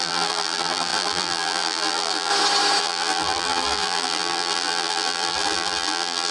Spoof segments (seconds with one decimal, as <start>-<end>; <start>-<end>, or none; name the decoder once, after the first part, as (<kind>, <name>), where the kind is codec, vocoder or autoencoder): 0.0-2.3 (vocoder, BigVGAN v2); 2.8-6.3